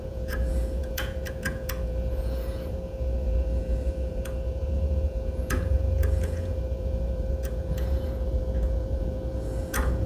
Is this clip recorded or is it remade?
remade